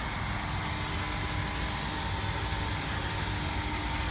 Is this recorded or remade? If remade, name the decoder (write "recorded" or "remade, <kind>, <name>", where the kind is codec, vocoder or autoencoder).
recorded